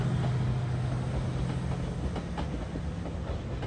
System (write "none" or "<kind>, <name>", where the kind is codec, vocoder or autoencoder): none